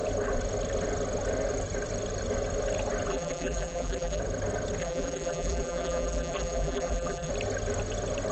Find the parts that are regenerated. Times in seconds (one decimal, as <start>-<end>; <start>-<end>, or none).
3.1-4.2; 4.8-7.3